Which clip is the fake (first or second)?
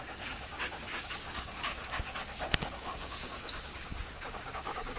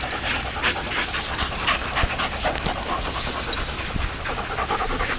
first